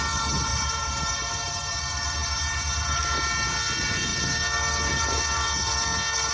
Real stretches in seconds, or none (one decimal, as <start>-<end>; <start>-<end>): 0.0-0.5; 1.8-2.2; 3.0-6.3